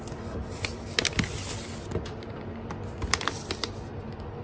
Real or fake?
real